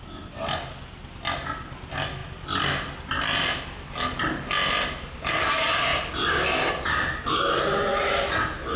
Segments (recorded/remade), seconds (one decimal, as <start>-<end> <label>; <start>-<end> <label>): 0.0-8.8 recorded